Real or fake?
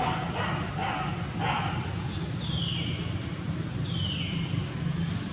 real